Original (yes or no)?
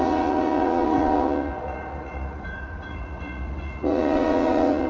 no